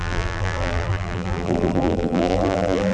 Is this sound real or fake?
fake